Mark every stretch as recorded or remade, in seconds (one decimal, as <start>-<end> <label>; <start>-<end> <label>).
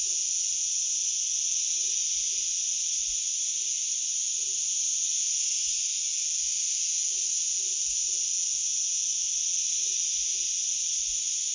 0.0-3.3 recorded; 3.3-4.2 remade; 4.2-11.5 recorded